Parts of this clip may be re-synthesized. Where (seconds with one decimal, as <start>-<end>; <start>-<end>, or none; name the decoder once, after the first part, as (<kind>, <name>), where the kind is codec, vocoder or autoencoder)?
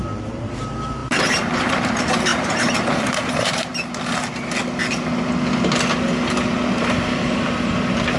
0.0-3.7 (vocoder, BigVGAN v2); 6.8-8.2